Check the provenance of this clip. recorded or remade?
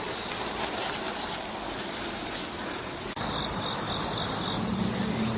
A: recorded